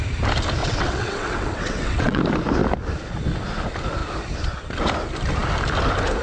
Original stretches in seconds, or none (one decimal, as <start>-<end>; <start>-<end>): 0.0-0.6; 2.2-6.2